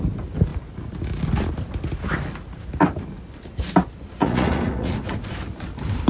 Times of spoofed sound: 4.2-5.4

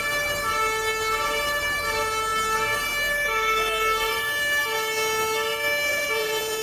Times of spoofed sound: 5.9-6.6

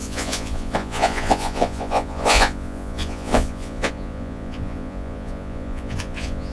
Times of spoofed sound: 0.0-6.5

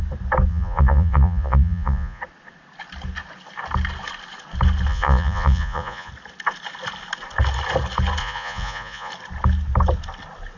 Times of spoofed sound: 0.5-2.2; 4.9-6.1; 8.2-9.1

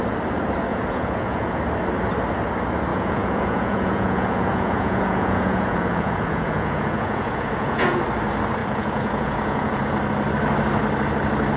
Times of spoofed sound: 0.7-1.6; 2.9-8.0; 8.6-9.9